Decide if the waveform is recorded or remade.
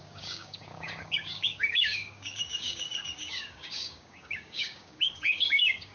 remade